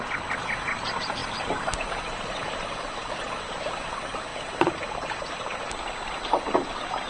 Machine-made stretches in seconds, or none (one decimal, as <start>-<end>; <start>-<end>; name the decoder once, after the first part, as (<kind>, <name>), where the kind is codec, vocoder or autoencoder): none